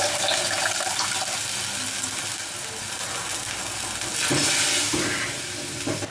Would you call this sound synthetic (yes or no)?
no